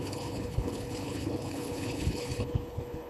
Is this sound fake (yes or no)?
yes